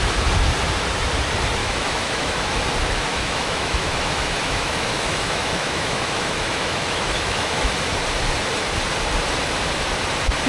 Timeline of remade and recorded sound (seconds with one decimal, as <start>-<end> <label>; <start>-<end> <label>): 0.0-1.6 recorded; 1.6-2.6 remade; 2.6-3.1 recorded; 3.1-7.7 remade; 7.7-10.5 recorded